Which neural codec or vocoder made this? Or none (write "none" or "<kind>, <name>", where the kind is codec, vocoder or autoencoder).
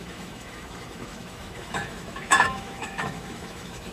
autoencoder, DAC-VAE